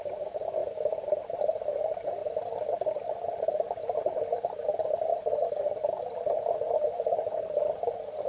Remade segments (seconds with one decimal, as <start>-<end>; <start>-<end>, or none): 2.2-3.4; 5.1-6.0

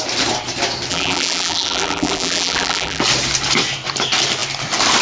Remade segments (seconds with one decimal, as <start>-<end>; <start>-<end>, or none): 0.9-3.0

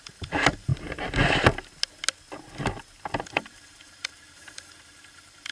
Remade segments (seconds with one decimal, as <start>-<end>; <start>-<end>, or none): 0.0-0.7; 3.2-5.5

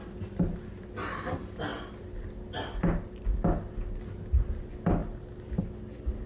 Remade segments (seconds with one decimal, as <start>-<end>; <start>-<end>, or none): none

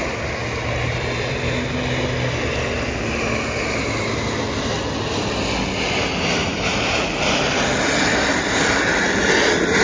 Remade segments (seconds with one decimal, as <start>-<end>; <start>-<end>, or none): none

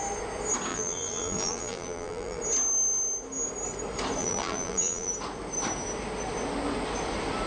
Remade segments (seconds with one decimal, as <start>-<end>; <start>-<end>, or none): 0.7-2.4; 4.2-5.1

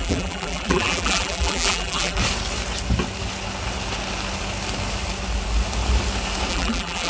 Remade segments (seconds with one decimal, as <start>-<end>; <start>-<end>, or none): 0.0-2.2; 6.5-7.1

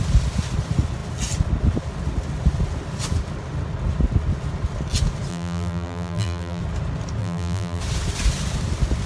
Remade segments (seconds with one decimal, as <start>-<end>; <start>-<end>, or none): 5.3-6.6; 7.2-7.8